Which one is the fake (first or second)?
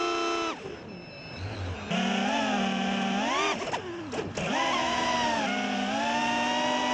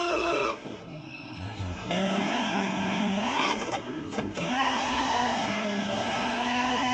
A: second